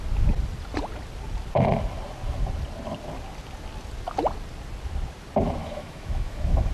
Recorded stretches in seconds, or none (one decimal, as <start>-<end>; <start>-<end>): 0.0-5.6